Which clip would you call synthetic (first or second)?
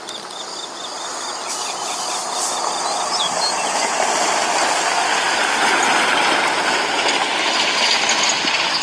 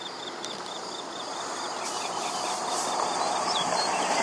second